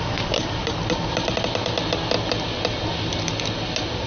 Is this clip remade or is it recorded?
recorded